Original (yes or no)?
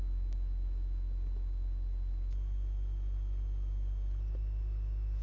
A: yes